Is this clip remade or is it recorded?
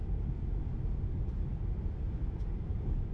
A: recorded